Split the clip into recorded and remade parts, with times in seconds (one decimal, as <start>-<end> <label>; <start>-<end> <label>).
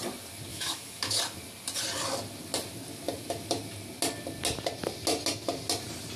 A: 0.0-0.5 recorded; 0.5-1.2 remade; 1.2-6.2 recorded